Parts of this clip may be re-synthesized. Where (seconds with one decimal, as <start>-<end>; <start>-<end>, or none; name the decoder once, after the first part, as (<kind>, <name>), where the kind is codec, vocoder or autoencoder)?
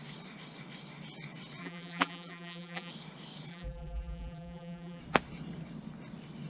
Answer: 1.6-2.9 (vocoder, BigVGAN v2); 3.5-5.0